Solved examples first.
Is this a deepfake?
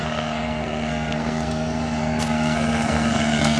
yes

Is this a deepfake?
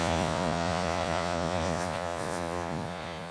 yes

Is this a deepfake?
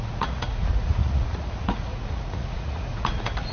yes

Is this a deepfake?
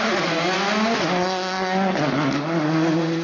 no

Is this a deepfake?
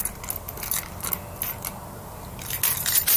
no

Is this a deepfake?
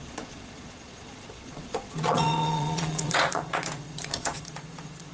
yes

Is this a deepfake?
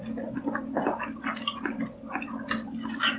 no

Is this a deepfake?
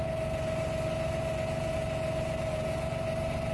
no